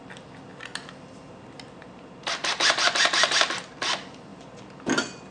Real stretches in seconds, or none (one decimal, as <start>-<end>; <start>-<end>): 0.0-5.3